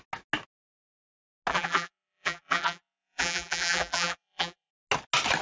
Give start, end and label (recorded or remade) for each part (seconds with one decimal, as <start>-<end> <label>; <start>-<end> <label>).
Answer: 0.0-1.5 recorded; 1.5-4.7 remade; 4.7-5.4 recorded